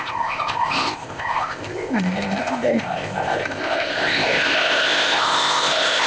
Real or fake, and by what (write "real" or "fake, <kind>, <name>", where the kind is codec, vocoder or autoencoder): fake, codec, ZipCodec